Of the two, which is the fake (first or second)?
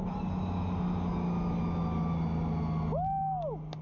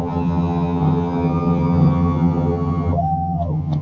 second